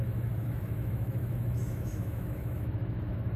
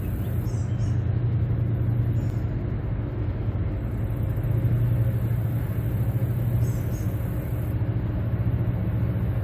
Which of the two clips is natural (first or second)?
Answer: second